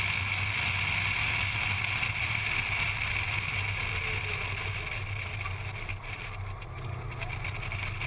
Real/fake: real